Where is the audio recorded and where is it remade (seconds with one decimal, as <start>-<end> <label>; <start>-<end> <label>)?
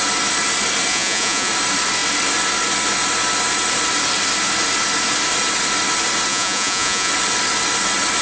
0.0-0.9 recorded; 0.9-1.5 remade; 1.5-6.3 recorded; 6.3-7.1 remade; 7.1-8.2 recorded